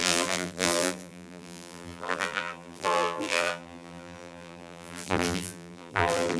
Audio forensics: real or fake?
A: fake